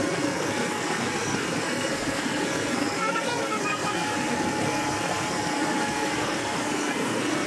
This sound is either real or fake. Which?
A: fake